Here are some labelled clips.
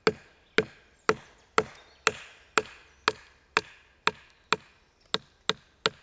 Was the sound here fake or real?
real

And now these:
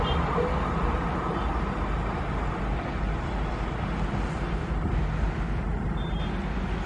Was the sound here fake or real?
real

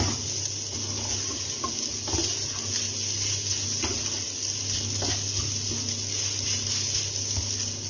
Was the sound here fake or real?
real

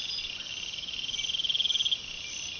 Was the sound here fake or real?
real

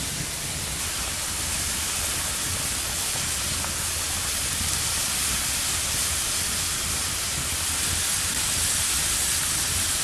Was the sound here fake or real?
real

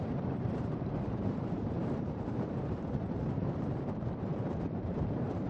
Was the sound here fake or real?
fake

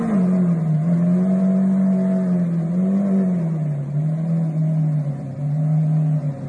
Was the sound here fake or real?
real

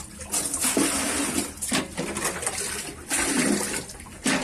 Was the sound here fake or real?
real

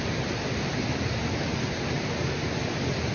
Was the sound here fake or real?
real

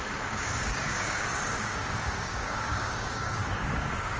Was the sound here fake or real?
fake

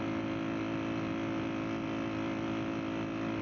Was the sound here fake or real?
real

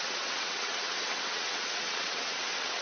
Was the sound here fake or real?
fake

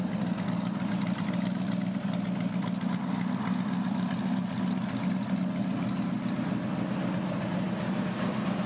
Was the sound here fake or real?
real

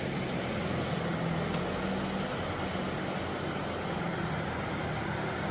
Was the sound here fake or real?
real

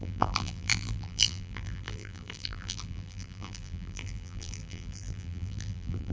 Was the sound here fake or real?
fake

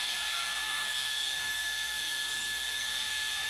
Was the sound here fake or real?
fake